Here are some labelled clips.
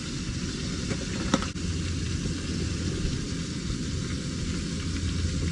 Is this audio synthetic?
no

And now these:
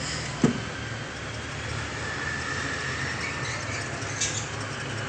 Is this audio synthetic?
no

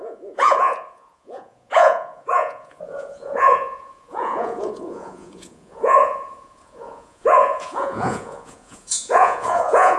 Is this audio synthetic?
yes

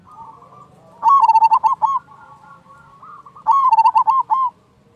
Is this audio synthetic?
no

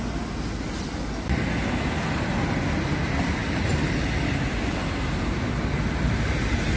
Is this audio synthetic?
no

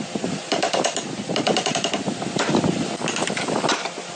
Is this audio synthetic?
no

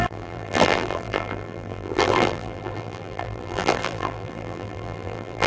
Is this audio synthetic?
yes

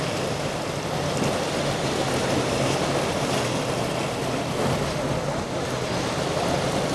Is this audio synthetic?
no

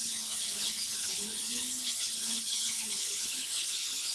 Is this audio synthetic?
yes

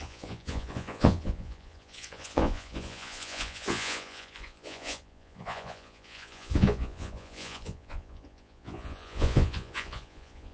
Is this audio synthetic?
yes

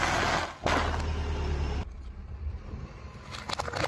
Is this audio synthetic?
no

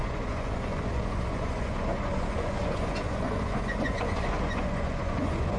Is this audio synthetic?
yes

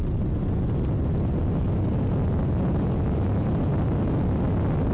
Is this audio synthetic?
no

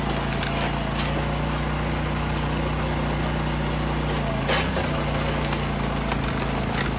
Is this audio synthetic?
no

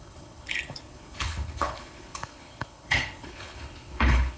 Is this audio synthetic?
yes